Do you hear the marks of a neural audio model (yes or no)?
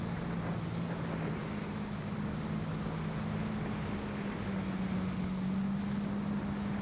no